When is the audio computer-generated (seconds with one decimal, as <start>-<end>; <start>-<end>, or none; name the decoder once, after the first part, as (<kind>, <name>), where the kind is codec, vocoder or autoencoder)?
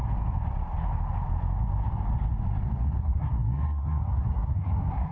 3.0-5.1 (codec, SNAC)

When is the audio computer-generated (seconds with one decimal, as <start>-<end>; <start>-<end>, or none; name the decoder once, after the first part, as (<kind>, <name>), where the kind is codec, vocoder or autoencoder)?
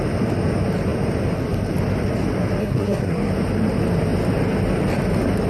2.6-3.3 (codec, SNAC)